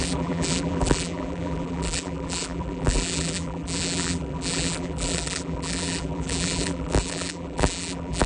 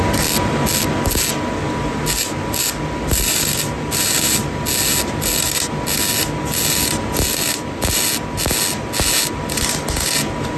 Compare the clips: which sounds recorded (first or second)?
second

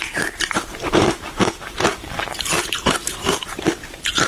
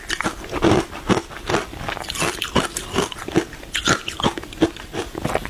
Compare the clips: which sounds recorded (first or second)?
second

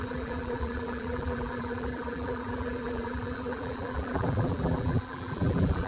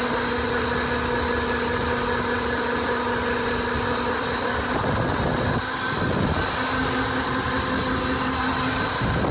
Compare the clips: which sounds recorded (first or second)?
second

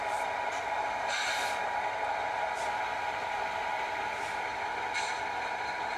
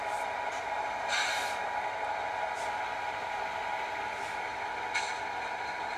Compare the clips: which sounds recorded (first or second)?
second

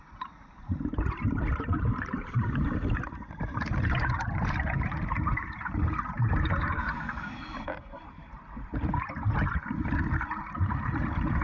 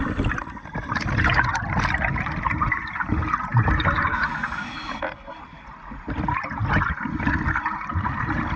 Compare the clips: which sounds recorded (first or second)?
second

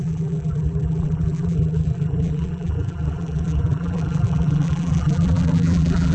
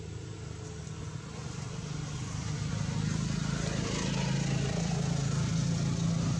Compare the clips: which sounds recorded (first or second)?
second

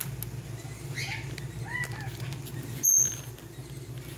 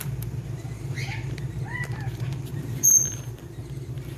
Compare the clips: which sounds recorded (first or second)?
first